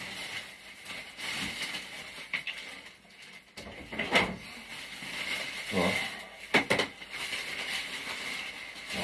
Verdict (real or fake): real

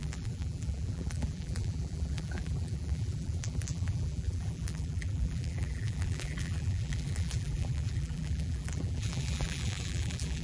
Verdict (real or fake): fake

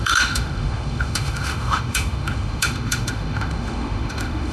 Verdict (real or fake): fake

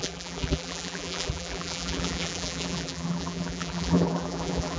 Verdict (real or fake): fake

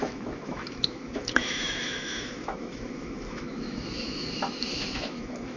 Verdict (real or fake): fake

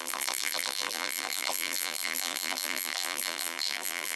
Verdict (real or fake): fake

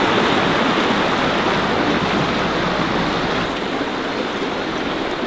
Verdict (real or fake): real